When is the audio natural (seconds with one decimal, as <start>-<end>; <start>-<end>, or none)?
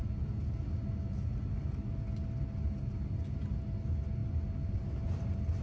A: 0.0-5.6